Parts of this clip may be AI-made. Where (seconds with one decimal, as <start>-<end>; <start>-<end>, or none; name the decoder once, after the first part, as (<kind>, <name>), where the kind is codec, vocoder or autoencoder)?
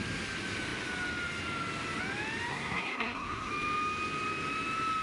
2.5-3.5 (codec, SNAC)